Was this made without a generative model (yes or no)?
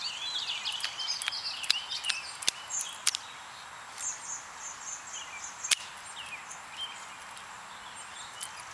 yes